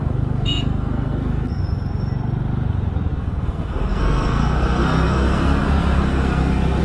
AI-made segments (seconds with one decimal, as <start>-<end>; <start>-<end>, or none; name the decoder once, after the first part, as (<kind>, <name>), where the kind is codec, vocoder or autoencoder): 0.0-1.6 (codec, SNAC); 3.1-6.8